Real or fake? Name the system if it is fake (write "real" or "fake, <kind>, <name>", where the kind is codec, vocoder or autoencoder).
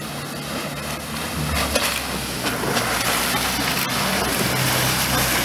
real